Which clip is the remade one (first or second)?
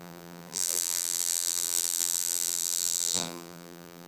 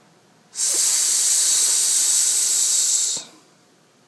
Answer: first